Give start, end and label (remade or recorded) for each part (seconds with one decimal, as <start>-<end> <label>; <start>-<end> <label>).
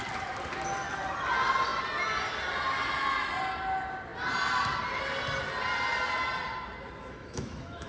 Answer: 0.0-7.0 recorded; 7.0-7.9 remade